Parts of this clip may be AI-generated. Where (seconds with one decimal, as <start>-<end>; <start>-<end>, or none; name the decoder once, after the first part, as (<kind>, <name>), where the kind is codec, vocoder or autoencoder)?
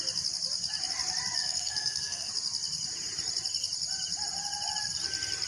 1.4-2.3 (codec, SNAC)